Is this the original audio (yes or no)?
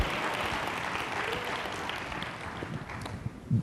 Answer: yes